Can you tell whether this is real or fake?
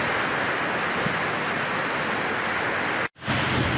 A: real